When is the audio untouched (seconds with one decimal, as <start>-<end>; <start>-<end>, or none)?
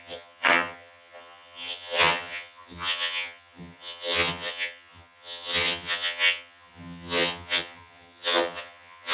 none